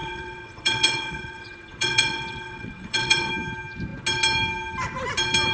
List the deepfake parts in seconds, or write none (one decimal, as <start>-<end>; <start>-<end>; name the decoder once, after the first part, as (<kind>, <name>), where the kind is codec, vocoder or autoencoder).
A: 0.0-3.3 (vocoder, WaveNeXt)